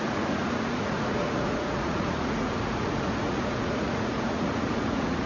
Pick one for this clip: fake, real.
fake